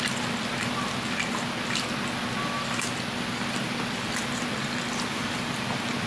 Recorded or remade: recorded